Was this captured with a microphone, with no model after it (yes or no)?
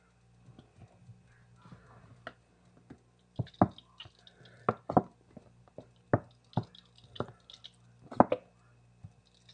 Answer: yes